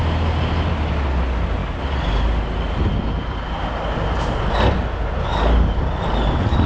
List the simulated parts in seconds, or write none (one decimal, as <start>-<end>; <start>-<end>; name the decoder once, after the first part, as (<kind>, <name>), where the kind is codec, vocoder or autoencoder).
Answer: none